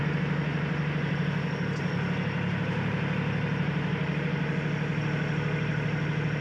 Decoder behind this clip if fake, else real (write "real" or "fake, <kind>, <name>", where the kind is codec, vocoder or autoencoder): real